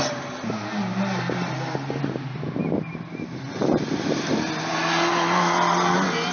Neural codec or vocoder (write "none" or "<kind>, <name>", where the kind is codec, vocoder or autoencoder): none